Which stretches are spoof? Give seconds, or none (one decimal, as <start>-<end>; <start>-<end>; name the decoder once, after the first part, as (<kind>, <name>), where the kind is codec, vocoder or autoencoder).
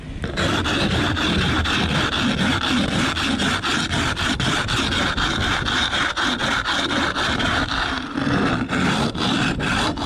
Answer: 6.4-9.5 (vocoder, BigVGAN v2)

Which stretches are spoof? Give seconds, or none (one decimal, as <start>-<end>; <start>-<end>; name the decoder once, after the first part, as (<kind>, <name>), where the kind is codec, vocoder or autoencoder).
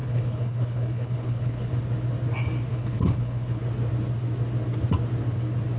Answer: 0.0-1.7 (codec, HILCodec); 2.7-3.6